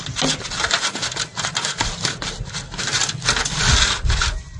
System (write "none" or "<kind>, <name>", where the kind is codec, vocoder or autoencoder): none